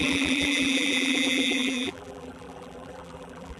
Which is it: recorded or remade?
remade